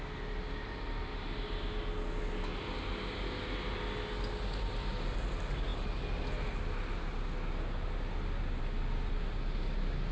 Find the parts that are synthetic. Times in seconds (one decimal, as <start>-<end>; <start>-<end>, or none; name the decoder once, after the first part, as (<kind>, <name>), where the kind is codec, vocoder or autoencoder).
none